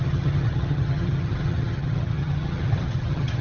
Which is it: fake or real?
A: fake